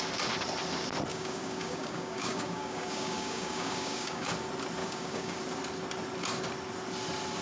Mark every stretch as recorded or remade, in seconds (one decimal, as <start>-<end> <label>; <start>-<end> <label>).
0.0-1.1 recorded; 1.1-4.3 remade; 4.3-4.8 recorded; 4.8-5.4 remade; 5.4-7.4 recorded

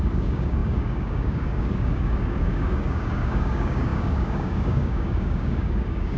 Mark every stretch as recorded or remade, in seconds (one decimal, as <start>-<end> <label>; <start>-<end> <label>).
0.0-6.2 remade

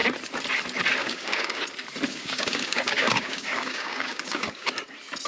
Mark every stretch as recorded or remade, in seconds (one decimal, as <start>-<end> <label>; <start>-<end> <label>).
0.0-1.0 recorded; 1.0-1.6 remade; 1.6-2.1 recorded; 2.1-4.7 remade; 4.7-5.3 recorded

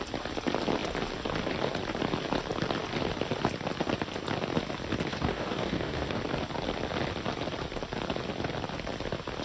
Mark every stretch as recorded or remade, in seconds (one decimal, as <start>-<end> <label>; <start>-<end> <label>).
0.0-5.1 recorded; 5.1-6.2 remade; 6.2-9.4 recorded

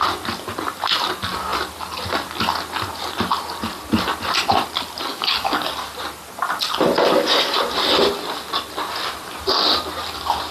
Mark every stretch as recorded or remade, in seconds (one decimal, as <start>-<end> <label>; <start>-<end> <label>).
0.0-5.1 recorded; 5.1-5.7 remade; 5.7-10.5 recorded